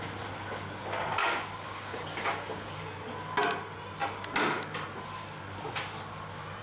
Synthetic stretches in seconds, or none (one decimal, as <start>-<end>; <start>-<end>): 1.2-2.8